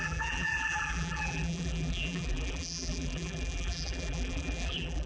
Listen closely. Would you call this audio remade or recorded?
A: remade